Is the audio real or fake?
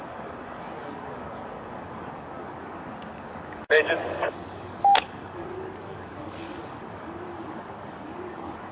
fake